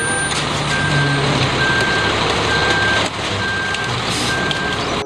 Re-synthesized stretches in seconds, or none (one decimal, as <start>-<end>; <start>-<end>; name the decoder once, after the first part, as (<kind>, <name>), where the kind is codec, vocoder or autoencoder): none